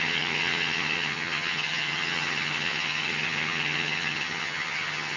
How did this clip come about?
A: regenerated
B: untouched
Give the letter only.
A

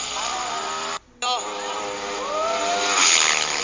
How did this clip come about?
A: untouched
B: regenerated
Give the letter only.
A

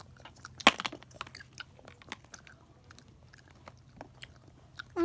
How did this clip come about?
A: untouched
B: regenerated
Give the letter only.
A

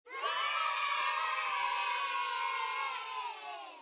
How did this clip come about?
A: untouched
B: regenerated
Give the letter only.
A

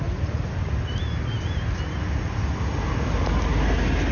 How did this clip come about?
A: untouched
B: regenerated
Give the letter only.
A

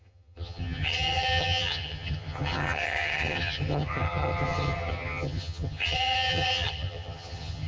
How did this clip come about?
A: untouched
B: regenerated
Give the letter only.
B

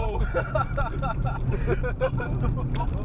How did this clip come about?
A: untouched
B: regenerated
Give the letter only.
A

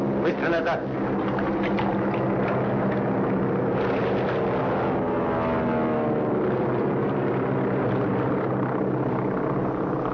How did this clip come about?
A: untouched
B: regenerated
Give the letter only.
A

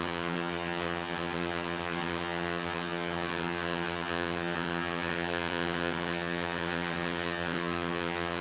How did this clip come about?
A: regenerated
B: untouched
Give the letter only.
A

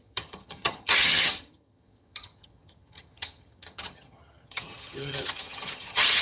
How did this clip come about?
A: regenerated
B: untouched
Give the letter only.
A